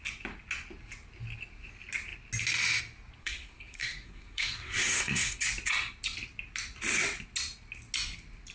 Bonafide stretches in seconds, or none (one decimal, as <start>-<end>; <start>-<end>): 0.0-3.2; 5.4-8.5